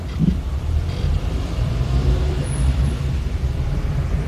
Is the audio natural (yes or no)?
no